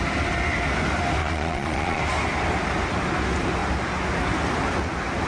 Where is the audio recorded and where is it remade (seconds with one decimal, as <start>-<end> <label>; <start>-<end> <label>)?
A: 0.0-1.2 recorded; 1.2-2.0 remade; 2.0-5.3 recorded